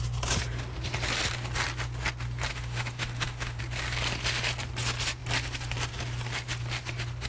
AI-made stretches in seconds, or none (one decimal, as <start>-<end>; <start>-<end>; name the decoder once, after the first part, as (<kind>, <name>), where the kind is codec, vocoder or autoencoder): 2.5-3.6 (autoencoder, DAC-VAE)